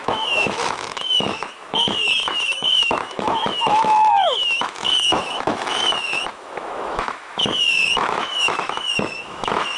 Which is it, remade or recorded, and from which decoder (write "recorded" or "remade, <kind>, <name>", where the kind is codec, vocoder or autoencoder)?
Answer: remade, autoencoder, DAC-VAE